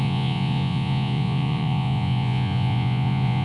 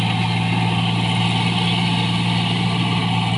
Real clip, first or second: second